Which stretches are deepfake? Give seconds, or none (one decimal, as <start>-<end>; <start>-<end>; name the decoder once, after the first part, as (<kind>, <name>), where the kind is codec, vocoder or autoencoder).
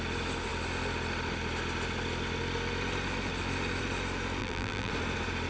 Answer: 4.4-4.9 (vocoder, BigVGAN v2)